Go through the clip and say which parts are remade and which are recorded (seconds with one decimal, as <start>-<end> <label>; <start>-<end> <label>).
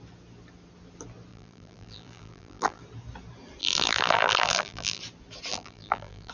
0.0-1.3 recorded; 1.3-2.8 remade; 2.8-3.6 recorded; 3.6-5.0 remade; 5.0-5.5 recorded; 5.5-6.3 remade